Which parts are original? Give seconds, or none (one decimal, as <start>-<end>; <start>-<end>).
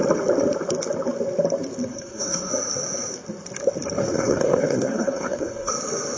0.0-1.9; 2.5-4.0; 5.7-6.2